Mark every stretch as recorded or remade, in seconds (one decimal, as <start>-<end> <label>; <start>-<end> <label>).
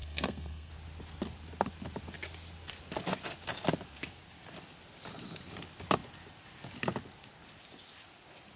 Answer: 0.0-0.7 remade; 0.7-8.6 recorded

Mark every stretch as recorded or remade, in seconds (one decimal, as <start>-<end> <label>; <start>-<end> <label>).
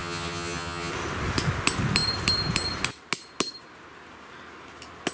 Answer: 0.0-0.9 remade; 0.9-5.1 recorded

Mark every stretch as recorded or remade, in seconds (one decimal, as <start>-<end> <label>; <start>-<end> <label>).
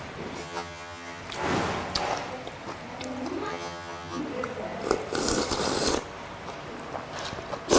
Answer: 0.0-0.4 recorded; 0.4-1.2 remade; 1.2-3.5 recorded; 3.5-4.2 remade; 4.2-7.8 recorded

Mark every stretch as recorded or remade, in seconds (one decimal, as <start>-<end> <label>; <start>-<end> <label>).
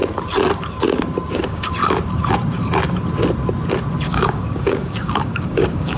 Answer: 0.0-1.3 recorded; 1.3-1.8 remade; 1.8-4.1 recorded; 4.1-6.0 remade